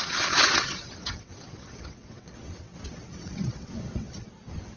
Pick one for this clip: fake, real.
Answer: fake